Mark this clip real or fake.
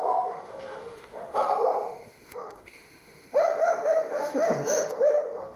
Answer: fake